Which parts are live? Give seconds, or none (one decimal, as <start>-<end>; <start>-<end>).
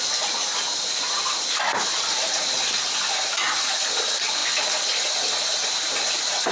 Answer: 0.0-6.5